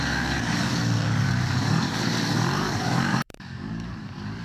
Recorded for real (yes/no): no